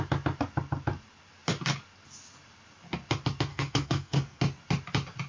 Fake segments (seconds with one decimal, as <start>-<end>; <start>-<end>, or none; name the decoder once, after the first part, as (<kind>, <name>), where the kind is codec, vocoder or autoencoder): 3.5-4.4 (codec, SNAC)